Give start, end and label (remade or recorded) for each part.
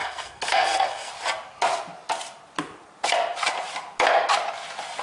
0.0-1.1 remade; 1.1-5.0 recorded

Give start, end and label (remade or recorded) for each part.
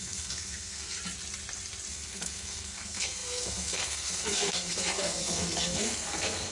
0.0-1.0 remade; 1.0-1.9 recorded; 1.9-6.5 remade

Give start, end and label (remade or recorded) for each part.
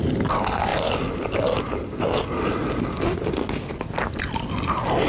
0.0-5.1 recorded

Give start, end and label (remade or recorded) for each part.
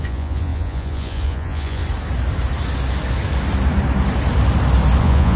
0.0-1.8 remade; 1.8-5.0 recorded; 5.0-5.4 remade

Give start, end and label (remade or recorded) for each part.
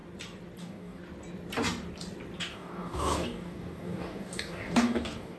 0.0-0.6 recorded; 0.6-1.0 remade; 1.0-2.4 recorded; 2.4-5.4 remade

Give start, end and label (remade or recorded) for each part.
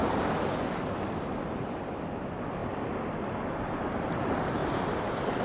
0.0-0.8 remade; 0.8-4.6 recorded; 4.6-5.4 remade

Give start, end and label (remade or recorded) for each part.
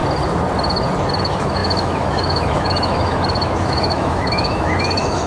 0.0-1.2 recorded; 1.2-5.3 remade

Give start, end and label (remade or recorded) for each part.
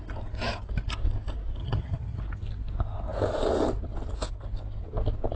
0.0-1.6 recorded; 1.6-2.2 remade; 2.2-5.4 recorded